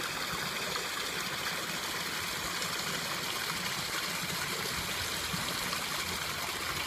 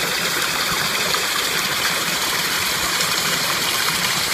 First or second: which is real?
first